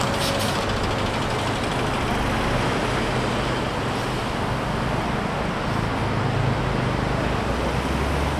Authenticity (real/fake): real